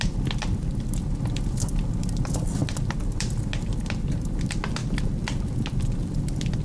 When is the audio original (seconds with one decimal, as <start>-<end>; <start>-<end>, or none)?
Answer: 0.0-6.6